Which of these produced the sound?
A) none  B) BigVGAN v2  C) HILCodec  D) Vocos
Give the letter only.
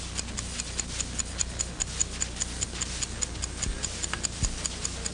A